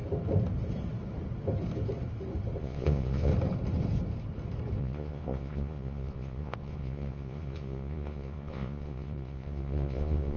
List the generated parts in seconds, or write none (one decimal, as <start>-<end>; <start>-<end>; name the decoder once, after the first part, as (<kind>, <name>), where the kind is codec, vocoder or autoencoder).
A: 2.6-3.3 (vocoder, Vocos); 4.8-10.4